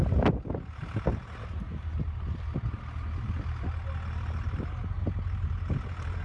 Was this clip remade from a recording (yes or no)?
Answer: no